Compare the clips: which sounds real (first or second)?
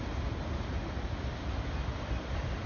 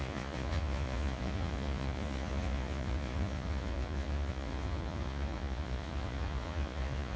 first